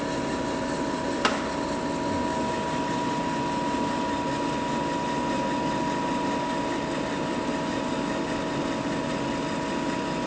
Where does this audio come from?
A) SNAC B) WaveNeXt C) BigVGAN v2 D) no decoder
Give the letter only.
D